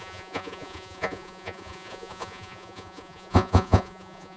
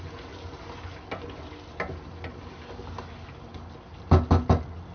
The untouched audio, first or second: second